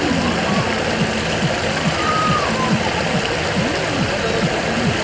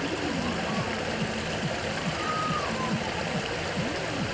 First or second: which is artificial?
second